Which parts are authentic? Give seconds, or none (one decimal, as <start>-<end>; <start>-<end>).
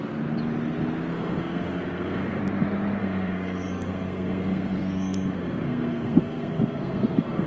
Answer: 0.0-1.1; 2.4-3.0